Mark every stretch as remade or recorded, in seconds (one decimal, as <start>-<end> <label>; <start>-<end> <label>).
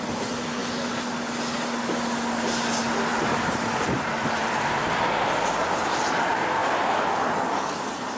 0.0-3.1 recorded; 3.1-4.8 remade; 4.8-8.2 recorded